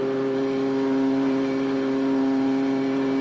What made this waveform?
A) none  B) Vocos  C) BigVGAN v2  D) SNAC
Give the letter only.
C